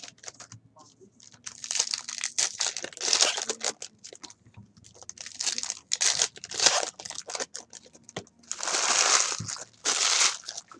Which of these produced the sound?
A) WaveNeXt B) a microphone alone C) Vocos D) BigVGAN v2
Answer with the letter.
B